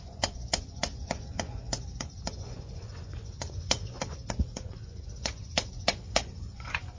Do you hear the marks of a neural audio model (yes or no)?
yes